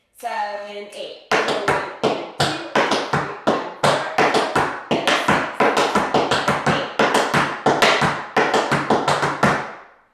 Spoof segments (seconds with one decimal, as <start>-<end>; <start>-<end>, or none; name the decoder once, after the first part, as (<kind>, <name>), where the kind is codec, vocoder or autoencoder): 0.0-0.7 (codec, SNAC)